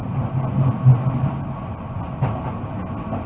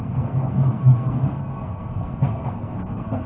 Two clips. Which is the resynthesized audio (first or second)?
second